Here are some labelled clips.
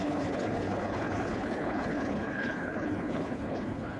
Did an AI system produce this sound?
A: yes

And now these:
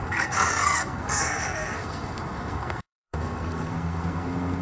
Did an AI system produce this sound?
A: yes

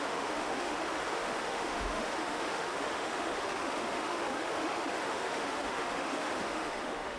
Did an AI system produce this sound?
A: yes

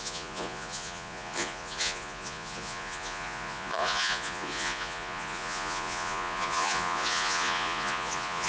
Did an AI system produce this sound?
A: yes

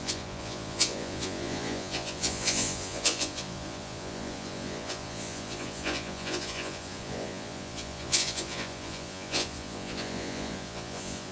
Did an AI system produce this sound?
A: yes